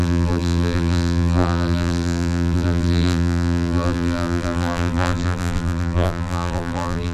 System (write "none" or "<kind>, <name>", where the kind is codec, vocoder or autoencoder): vocoder, BigVGAN v2